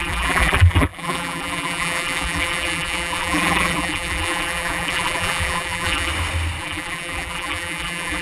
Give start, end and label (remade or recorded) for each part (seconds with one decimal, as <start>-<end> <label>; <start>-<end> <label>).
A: 0.0-6.1 remade; 6.1-6.6 recorded; 6.6-8.2 remade